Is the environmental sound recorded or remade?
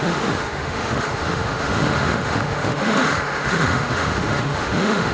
remade